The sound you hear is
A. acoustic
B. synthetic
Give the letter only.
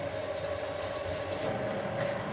A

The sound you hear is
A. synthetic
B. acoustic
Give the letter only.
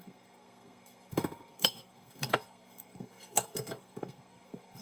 A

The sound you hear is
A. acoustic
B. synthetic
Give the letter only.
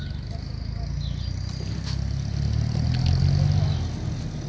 A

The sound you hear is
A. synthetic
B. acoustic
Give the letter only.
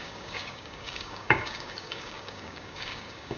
A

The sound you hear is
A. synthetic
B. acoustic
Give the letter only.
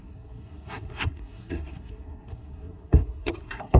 A